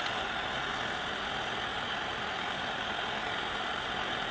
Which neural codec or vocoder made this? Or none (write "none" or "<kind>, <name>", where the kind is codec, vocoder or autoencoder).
none